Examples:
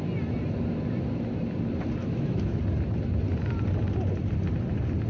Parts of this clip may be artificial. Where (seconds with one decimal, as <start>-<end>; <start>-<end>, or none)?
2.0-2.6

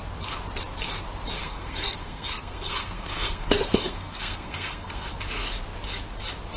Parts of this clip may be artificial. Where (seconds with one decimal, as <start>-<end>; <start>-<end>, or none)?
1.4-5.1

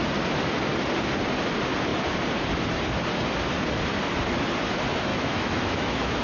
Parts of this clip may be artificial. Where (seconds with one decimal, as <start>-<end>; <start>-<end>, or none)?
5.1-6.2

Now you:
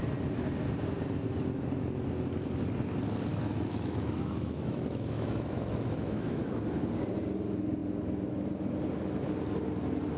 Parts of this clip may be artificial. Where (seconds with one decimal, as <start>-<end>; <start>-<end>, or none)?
3.3-6.4

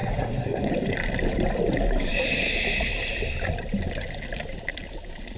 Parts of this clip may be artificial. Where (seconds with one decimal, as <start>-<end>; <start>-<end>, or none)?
0.0-0.7

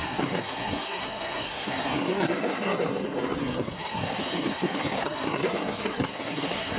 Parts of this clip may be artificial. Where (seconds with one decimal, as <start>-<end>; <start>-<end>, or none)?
0.0-6.8

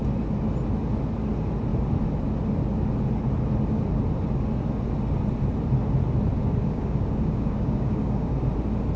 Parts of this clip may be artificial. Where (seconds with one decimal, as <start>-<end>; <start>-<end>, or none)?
6.4-8.3

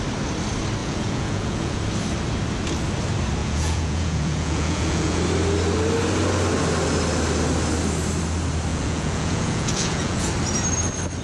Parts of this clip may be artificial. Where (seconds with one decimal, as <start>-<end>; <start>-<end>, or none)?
0.8-1.8; 3.4-5.2; 8.7-10.3